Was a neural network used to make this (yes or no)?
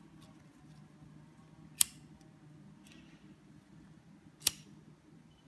no